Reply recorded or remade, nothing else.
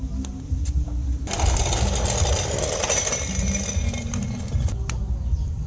recorded